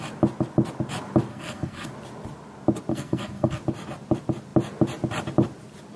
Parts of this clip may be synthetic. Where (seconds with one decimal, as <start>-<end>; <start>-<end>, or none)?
1.3-1.9; 2.9-3.6